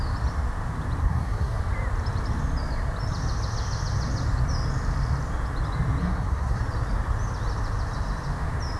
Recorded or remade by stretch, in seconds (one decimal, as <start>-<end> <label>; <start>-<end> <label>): 0.0-1.0 recorded; 1.0-1.6 remade; 1.6-6.0 recorded; 6.0-6.6 remade; 6.6-8.8 recorded